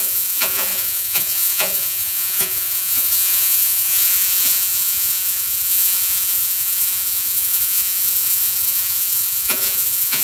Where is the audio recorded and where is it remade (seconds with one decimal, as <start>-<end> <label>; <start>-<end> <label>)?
0.0-10.2 remade